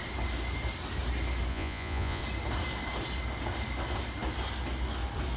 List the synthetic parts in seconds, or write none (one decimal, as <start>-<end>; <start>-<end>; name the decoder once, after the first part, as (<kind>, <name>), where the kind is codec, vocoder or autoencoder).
1.5-2.2 (vocoder, Vocos)